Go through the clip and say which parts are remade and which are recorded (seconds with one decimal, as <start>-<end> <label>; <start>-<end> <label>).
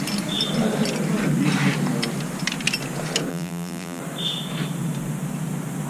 0.0-3.3 recorded; 3.3-4.0 remade; 4.0-5.9 recorded